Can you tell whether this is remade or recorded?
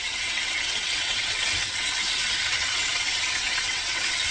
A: remade